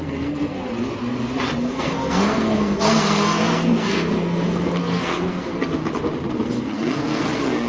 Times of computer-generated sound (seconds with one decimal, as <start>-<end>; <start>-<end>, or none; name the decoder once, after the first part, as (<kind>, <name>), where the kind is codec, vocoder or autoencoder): 0.0-0.6 (codec, SNAC); 1.7-5.8; 6.3-7.7